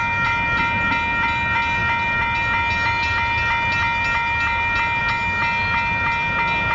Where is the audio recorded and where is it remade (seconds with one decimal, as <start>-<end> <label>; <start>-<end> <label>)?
0.0-6.7 recorded